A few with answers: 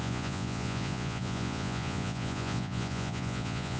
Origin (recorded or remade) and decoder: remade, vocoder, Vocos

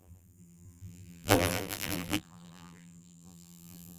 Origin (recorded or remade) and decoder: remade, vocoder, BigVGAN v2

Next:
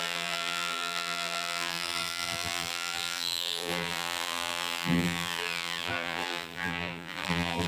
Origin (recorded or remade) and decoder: remade, vocoder, BigVGAN v2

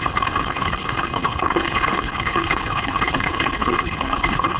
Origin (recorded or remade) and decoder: remade, codec, HILCodec